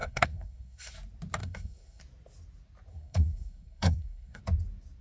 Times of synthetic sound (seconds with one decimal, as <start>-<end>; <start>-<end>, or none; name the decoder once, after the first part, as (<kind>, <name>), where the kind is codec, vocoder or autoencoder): 0.0-0.9 (codec, SNAC); 1.4-2.0; 2.9-4.4